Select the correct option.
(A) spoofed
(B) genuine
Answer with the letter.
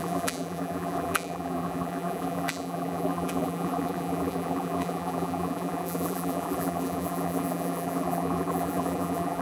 A